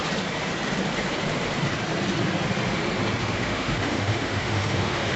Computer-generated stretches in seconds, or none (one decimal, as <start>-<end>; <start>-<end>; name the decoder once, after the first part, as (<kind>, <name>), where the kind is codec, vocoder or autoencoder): 3.2-5.2 (autoencoder, DAC-VAE)